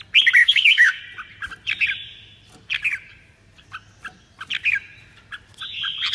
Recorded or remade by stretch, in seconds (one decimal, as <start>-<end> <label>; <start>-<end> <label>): 0.0-0.4 recorded; 0.4-1.0 remade; 1.0-6.1 recorded